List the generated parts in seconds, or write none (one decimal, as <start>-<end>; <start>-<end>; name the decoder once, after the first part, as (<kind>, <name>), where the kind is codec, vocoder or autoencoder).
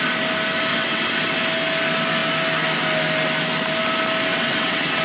0.7-1.4 (vocoder, WaveNeXt); 4.3-5.0